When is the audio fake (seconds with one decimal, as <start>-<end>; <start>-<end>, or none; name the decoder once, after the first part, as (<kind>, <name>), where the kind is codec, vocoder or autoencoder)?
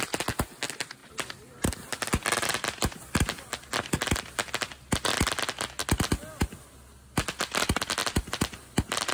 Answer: 1.0-4.5 (vocoder, BigVGAN v2); 8.0-9.1